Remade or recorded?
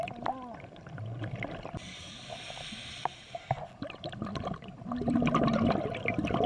recorded